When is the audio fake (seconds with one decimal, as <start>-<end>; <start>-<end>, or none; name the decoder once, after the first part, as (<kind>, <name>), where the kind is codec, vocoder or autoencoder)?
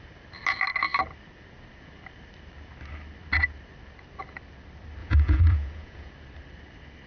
5.0-6.1 (vocoder, Vocos)